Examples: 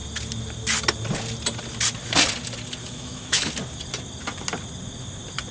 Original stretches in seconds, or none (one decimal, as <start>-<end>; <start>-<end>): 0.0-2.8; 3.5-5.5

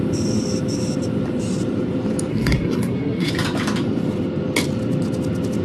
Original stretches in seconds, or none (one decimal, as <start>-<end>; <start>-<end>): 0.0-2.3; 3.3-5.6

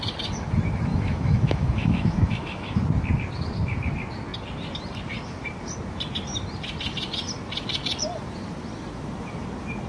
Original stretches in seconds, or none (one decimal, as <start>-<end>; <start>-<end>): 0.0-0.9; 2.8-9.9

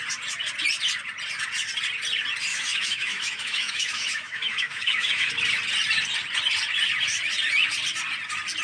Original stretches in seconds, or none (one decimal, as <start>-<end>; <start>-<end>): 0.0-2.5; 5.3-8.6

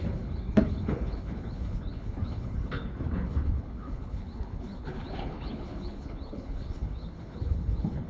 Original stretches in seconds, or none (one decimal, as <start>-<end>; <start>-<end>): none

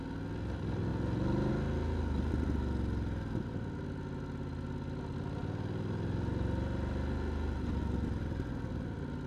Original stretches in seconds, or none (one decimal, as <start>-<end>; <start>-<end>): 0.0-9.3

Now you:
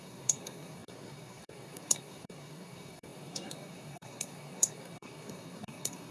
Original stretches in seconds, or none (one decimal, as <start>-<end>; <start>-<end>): none

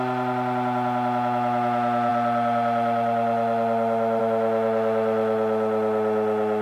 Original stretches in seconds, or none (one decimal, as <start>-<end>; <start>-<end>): 0.0-6.6